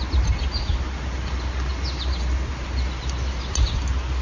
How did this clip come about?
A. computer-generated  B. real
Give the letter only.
B